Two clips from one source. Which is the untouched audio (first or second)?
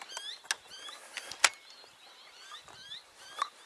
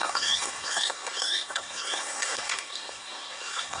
first